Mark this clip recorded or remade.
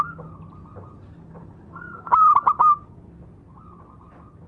recorded